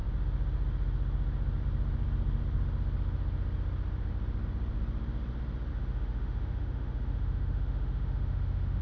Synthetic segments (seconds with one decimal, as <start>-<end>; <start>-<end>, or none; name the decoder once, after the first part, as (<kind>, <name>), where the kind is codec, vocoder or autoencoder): 5.7-8.8 (autoencoder, DAC-VAE)